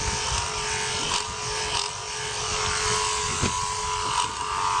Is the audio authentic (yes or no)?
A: yes